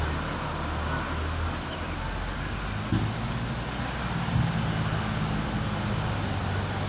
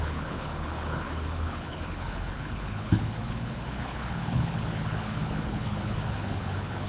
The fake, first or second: second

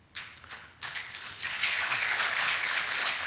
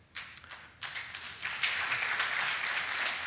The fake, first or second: first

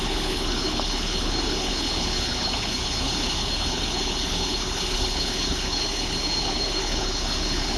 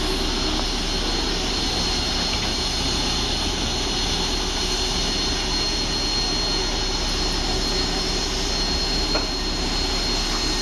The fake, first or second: first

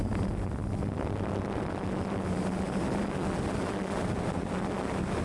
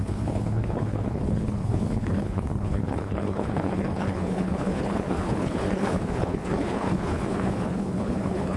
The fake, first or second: second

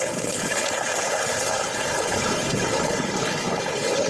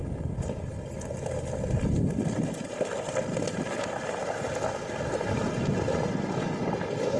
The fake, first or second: first